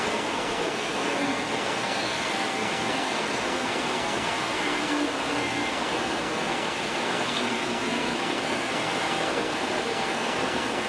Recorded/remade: remade